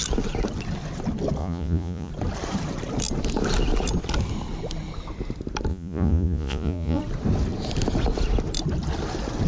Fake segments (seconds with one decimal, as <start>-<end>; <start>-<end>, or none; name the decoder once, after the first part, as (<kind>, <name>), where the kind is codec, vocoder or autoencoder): 1.4-2.1 (vocoder, Vocos); 5.7-7.0